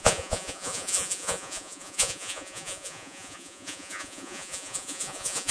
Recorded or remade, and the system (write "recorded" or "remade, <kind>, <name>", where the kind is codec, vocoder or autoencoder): remade, vocoder, Vocos